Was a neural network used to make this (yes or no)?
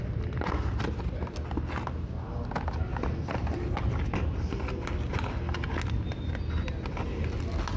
no